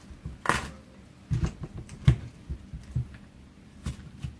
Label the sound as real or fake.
real